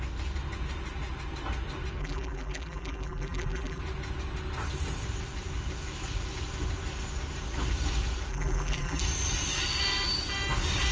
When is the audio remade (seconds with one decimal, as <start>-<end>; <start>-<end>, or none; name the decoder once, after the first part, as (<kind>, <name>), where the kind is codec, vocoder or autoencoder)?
2.0-3.8 (vocoder, BigVGAN v2); 8.3-9.0